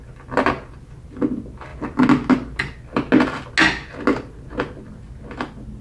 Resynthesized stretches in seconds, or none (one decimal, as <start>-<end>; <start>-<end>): none